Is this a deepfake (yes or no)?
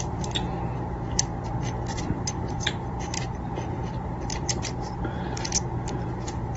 yes